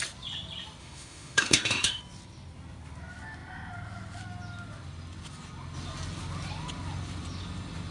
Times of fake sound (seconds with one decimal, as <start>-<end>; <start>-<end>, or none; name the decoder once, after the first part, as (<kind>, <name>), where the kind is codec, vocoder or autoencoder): 0.8-2.0 (autoencoder, DAC-VAE)